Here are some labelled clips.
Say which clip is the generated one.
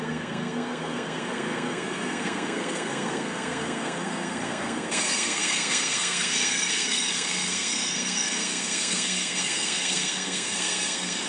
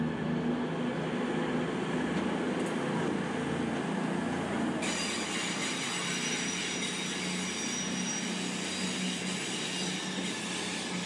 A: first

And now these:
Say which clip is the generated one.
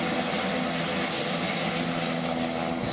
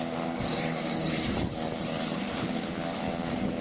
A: second